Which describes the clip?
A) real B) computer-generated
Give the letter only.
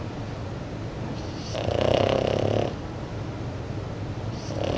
A